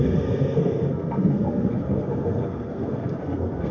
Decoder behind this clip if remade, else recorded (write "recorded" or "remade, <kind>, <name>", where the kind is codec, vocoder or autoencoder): remade, codec, SNAC